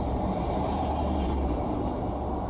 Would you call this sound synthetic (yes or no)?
yes